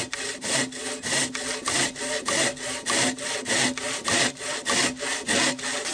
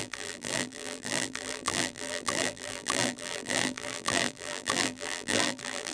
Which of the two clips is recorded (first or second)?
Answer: first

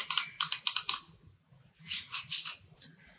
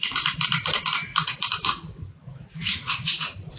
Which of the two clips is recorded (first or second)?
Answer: first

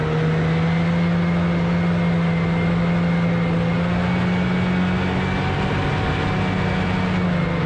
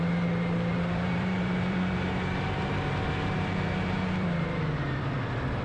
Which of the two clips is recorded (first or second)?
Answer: first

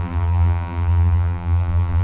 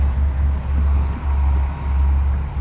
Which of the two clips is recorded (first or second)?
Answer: second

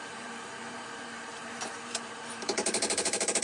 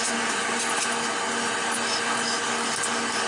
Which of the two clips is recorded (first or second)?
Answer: second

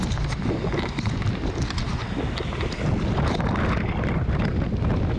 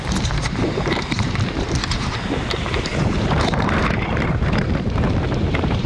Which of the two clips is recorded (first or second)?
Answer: first